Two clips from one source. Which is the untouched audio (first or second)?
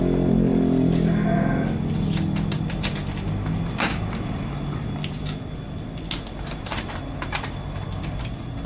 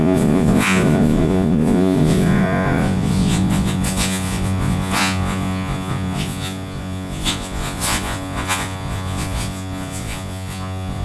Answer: first